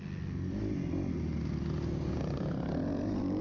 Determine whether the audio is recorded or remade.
recorded